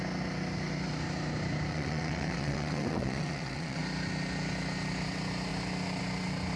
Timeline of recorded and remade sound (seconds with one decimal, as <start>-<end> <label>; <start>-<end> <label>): 0.0-1.7 recorded; 1.7-3.8 remade; 3.8-6.6 recorded